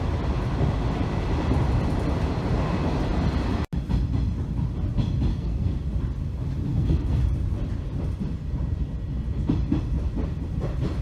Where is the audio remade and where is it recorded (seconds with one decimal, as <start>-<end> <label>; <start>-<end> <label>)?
0.0-5.3 recorded; 5.3-5.8 remade; 5.8-6.7 recorded; 6.7-7.2 remade; 7.2-11.0 recorded